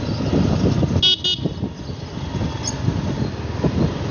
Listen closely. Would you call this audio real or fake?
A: real